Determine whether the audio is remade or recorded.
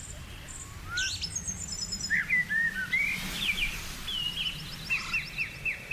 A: recorded